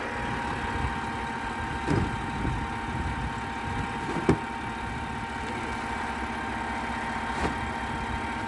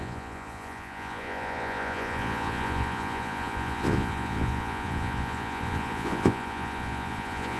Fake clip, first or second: second